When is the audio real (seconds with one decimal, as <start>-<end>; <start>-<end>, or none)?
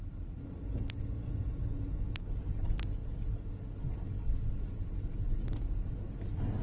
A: 0.0-6.6